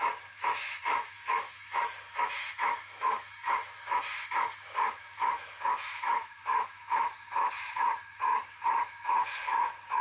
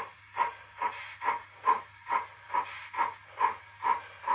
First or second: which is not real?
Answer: first